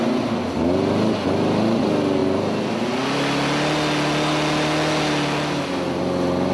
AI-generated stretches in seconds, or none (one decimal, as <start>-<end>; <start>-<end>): none